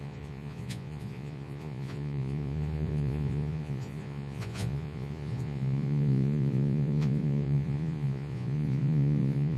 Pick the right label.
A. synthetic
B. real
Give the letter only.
A